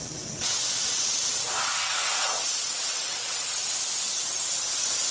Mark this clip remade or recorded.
remade